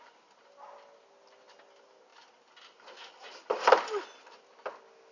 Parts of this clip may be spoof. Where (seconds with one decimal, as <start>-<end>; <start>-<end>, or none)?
none